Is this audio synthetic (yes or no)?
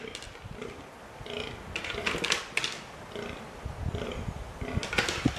no